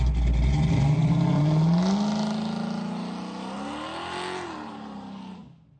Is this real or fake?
real